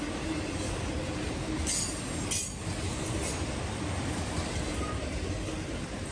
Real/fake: real